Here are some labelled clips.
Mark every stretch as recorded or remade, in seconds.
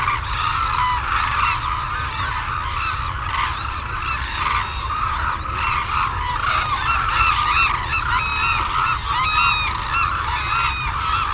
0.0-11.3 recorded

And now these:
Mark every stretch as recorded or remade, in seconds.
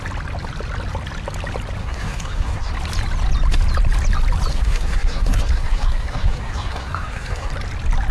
0.0-1.8 recorded; 1.8-2.7 remade; 2.7-4.5 recorded; 4.5-7.5 remade; 7.5-8.1 recorded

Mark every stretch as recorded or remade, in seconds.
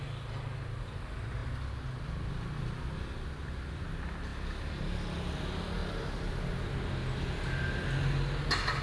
0.0-1.4 recorded; 1.4-2.3 remade; 2.3-4.3 recorded; 4.3-4.8 remade; 4.8-8.8 recorded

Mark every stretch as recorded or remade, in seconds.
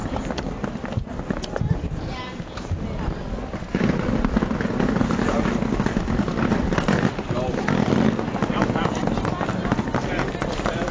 0.0-10.9 recorded